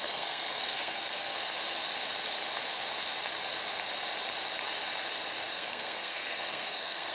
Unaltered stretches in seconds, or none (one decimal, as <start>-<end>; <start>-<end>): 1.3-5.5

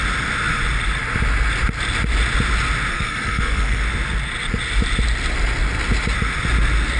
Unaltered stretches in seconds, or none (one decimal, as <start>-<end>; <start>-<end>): 0.0-2.9; 3.8-7.0

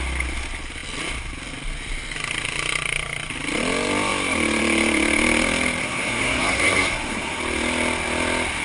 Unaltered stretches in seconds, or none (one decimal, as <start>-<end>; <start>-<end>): 0.0-5.8; 7.4-8.6

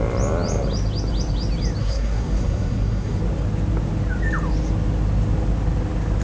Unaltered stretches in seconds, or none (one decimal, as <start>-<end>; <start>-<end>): 0.0-1.8; 3.2-6.2